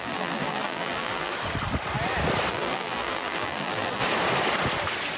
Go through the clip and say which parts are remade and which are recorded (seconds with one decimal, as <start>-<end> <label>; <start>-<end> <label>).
0.0-1.3 remade; 1.3-2.5 recorded; 2.5-4.0 remade; 4.0-5.2 recorded